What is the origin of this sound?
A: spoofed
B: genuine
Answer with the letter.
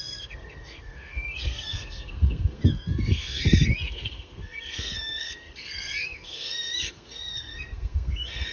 A